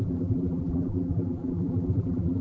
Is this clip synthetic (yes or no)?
yes